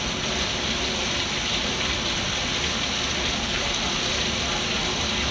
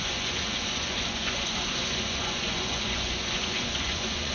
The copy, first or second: second